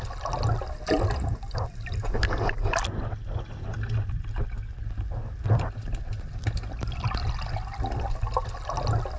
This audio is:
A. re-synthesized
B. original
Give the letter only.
B